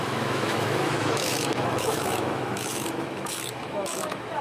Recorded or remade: remade